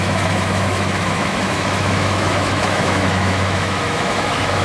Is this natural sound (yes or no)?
no